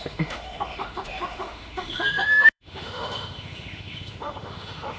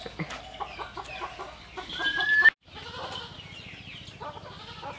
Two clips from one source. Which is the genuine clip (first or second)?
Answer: second